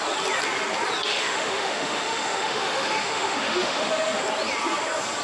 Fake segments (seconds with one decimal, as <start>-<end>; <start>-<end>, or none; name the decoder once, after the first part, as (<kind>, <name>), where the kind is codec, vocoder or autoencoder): 1.1-4.2 (autoencoder, DAC-VAE)